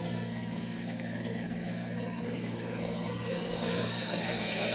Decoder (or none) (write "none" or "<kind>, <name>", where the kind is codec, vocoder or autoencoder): codec, SNAC